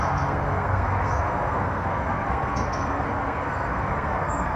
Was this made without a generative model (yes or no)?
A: no